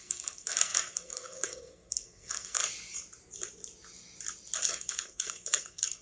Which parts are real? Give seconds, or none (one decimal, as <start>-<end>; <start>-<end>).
2.6-4.7